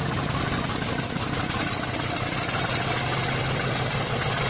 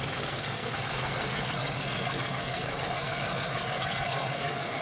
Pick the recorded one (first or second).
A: first